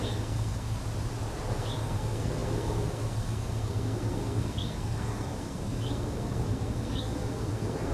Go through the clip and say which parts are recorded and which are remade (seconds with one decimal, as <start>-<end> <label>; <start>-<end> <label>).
0.0-0.8 remade; 0.8-1.5 recorded; 1.5-7.9 remade